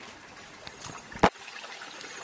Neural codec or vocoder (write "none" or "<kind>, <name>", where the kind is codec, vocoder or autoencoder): none